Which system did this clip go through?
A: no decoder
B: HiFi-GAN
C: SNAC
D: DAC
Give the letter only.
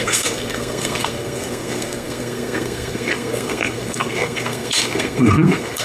C